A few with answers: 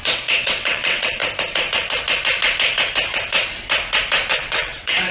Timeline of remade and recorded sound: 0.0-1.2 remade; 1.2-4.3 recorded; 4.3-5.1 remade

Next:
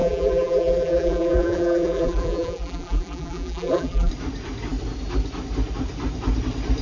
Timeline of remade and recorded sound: 0.0-4.1 remade; 4.1-6.8 recorded